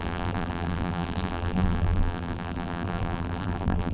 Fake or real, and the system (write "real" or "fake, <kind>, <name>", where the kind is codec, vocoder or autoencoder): fake, vocoder, BigVGAN v2